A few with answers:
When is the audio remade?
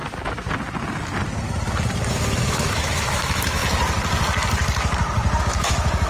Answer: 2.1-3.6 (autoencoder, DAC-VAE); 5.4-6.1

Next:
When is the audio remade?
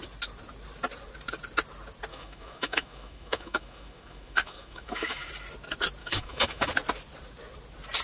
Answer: 2.1-5.3 (autoencoder, DAC-VAE); 6.0-6.7